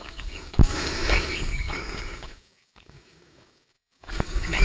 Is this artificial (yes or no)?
yes